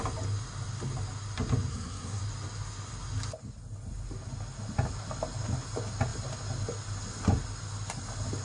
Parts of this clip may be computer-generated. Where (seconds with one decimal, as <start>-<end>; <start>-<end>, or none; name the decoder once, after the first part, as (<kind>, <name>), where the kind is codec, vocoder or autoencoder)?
1.7-2.2 (codec, SNAC)